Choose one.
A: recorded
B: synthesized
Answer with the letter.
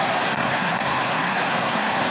B